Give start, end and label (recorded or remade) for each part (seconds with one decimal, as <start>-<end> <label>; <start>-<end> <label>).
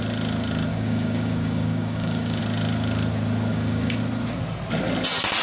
0.0-0.7 recorded; 0.7-2.4 remade; 2.4-3.5 recorded; 3.5-4.0 remade; 4.0-5.4 recorded